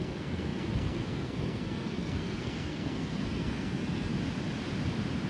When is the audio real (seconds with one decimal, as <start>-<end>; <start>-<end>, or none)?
4.1-5.3

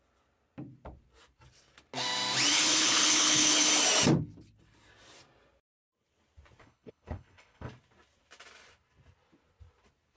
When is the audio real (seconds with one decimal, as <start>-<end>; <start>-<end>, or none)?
0.0-2.5; 3.7-6.6; 7.7-10.2